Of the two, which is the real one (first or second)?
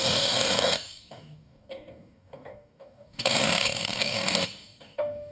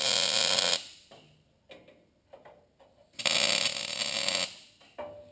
second